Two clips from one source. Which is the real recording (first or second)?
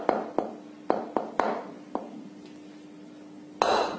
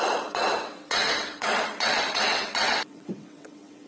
first